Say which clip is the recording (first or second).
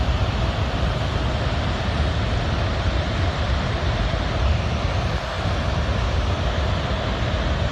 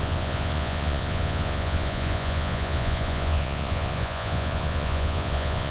first